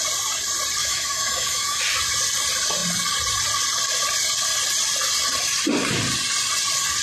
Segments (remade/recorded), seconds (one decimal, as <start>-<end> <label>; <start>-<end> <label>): 0.0-0.8 recorded; 0.8-1.8 remade; 1.8-7.0 recorded